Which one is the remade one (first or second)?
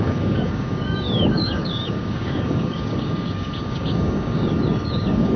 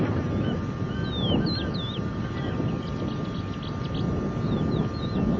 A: first